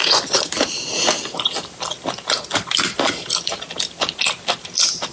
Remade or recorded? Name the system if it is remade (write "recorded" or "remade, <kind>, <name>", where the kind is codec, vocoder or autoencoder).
recorded